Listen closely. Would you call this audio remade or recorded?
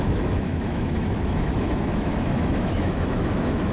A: remade